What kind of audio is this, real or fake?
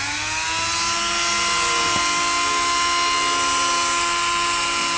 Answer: real